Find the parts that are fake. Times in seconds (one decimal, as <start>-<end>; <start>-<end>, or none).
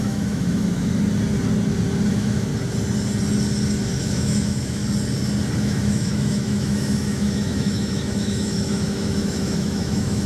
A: 0.0-0.9; 2.1-2.5; 4.0-4.8; 5.6-10.3